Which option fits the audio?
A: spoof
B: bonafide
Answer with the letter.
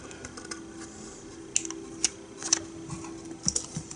B